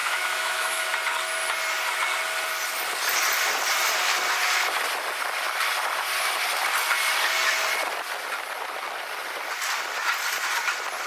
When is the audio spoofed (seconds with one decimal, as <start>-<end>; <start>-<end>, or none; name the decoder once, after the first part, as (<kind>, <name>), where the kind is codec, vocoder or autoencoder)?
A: 0.0-0.9 (autoencoder, DAC-VAE)